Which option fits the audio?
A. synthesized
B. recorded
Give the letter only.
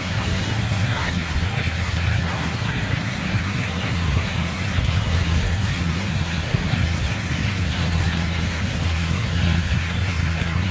A